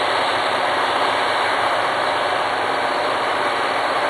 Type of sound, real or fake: fake